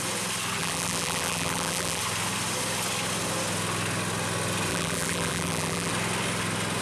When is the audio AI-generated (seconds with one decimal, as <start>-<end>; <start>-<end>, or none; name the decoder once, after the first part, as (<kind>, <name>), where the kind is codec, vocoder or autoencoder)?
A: 0.6-2.0 (vocoder, BigVGAN v2); 4.7-5.9

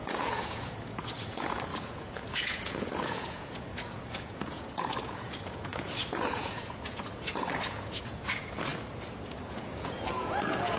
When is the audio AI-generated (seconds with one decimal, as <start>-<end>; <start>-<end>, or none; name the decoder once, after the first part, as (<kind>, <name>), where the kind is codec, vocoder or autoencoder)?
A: 0.0-8.7 (vocoder, Vocos); 9.3-10.8

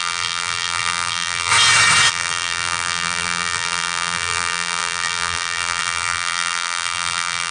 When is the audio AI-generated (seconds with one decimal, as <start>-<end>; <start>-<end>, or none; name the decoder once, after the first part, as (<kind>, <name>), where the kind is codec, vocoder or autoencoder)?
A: 0.0-1.5 (vocoder, BigVGAN v2); 2.1-7.5

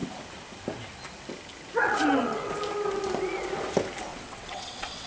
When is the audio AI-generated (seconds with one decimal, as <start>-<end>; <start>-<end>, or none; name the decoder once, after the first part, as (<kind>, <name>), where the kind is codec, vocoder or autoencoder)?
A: 1.8-2.5 (vocoder, WaveNeXt); 4.1-5.1

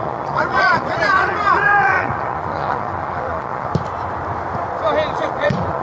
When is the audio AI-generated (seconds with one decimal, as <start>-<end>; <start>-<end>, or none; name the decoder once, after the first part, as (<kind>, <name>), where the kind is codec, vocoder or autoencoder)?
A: 0.0-3.7 (vocoder, Vocos); 5.1-5.8

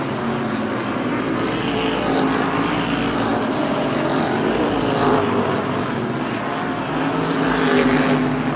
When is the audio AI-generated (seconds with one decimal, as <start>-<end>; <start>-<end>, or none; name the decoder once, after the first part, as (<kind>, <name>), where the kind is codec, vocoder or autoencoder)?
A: none